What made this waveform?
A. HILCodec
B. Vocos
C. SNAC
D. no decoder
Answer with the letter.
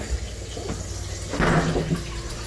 D